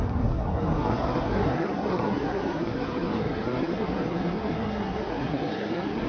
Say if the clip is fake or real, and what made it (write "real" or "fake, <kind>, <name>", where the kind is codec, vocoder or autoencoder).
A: fake, codec, SNAC